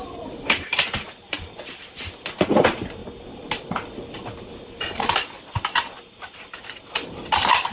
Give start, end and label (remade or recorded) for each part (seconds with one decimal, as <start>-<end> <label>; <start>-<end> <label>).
0.0-7.7 recorded